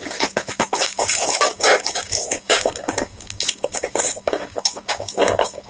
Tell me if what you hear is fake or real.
fake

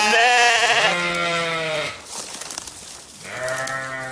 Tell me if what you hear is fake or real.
real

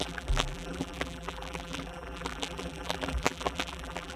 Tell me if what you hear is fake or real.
fake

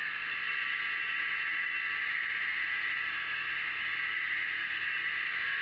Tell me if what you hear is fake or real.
real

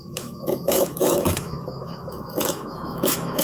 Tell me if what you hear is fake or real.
fake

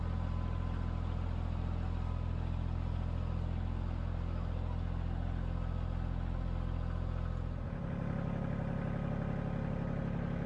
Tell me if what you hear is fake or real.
real